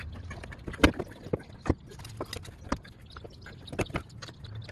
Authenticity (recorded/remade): recorded